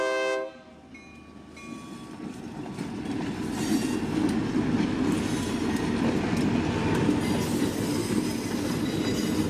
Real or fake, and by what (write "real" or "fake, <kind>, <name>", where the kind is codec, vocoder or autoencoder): real